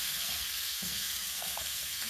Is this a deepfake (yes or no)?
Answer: yes